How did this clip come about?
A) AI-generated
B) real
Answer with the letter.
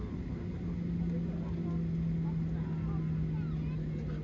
B